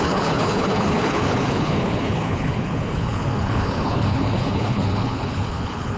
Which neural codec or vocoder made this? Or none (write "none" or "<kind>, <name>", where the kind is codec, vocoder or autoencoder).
codec, HILCodec